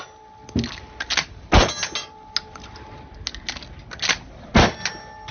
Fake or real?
real